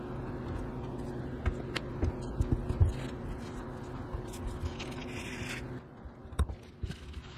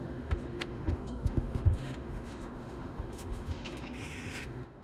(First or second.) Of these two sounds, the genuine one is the first